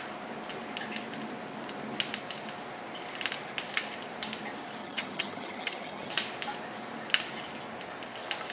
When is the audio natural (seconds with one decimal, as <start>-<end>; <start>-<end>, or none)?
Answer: 0.0-4.8; 6.1-8.5